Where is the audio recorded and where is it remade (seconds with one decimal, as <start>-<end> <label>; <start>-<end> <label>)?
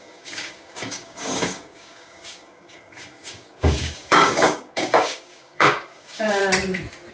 0.0-6.4 remade; 6.4-7.1 recorded